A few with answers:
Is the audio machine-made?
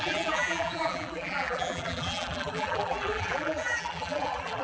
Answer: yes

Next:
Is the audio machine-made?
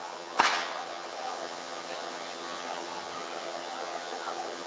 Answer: yes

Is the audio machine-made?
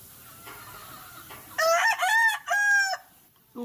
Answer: no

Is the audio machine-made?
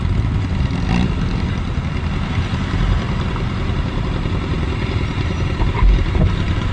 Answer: no